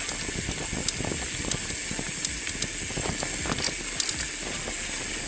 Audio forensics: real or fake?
real